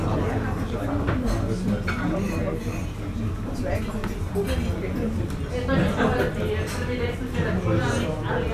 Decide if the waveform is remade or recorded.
recorded